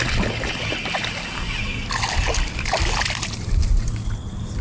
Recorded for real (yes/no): yes